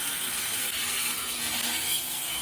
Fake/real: fake